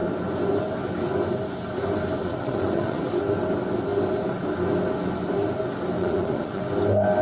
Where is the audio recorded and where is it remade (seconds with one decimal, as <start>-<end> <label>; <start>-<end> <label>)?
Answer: 0.0-2.2 recorded; 2.2-3.0 remade; 3.0-6.0 recorded; 6.0-6.6 remade; 6.6-7.2 recorded

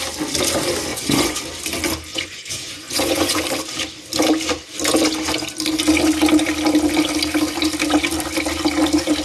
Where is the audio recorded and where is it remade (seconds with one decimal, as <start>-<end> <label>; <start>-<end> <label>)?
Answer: 0.0-0.9 recorded; 0.9-1.4 remade; 1.4-2.1 recorded; 2.1-3.4 remade; 3.4-9.2 recorded